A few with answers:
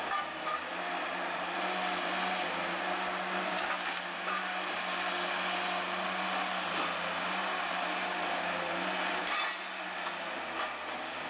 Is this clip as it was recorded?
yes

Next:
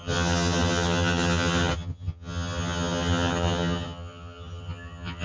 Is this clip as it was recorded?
no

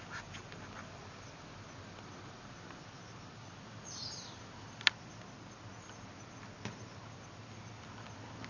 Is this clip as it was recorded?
yes